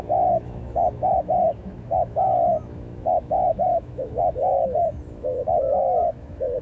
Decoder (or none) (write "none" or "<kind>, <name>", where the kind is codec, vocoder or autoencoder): autoencoder, DAC-VAE